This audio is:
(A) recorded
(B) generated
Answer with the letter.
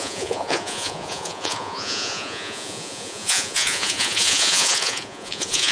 B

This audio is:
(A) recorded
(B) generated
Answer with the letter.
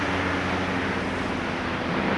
A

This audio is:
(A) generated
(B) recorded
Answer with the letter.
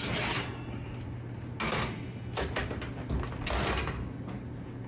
B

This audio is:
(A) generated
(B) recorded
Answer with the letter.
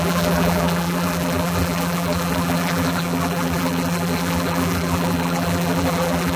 A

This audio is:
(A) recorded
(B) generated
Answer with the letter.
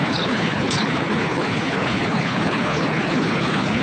B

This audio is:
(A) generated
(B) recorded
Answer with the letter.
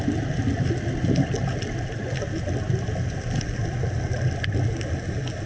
B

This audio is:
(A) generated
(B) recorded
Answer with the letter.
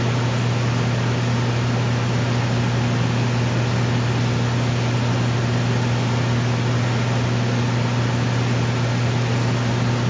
B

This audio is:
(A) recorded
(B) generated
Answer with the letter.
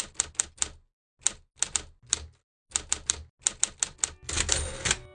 A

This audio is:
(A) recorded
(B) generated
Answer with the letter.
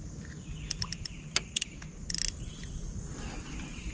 A